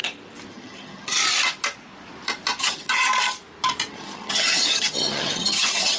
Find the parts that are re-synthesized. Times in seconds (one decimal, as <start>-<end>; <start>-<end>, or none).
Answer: 0.5-1.2; 2.6-3.1; 3.9-6.0